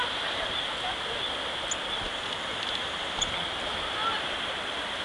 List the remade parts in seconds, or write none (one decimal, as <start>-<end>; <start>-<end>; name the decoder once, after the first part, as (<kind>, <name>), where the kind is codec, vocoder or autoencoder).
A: 2.1-3.3 (vocoder, BigVGAN v2)